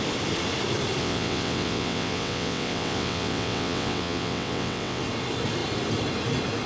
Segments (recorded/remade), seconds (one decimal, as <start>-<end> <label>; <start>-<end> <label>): 0.0-1.0 recorded; 1.0-5.0 remade; 5.0-6.7 recorded